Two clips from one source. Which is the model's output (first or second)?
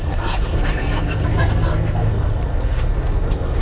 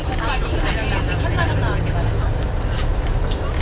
first